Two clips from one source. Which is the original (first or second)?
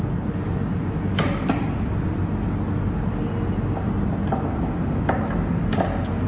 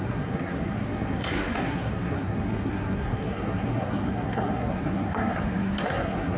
first